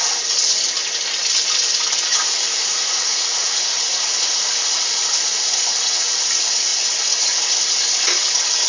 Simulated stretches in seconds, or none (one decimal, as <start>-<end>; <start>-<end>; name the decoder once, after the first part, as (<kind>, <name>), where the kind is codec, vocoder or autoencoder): 2.1-4.5 (vocoder, Vocos); 5.3-6.3